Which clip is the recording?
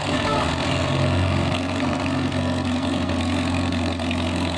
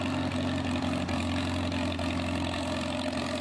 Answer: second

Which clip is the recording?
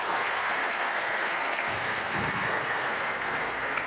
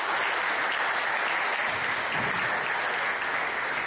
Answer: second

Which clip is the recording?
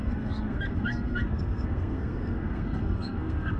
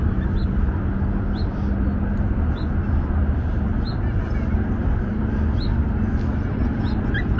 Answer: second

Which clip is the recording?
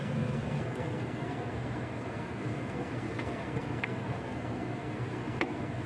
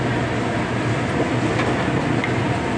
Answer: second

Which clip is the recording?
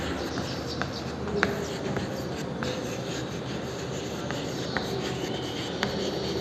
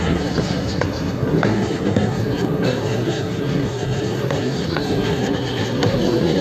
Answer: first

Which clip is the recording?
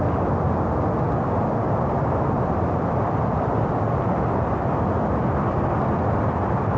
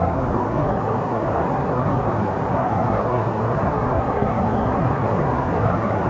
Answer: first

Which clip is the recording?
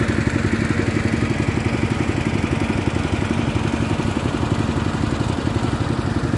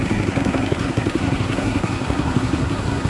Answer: first